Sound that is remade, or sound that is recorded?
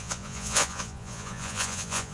remade